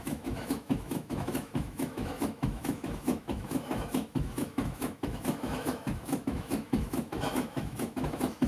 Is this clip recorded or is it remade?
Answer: remade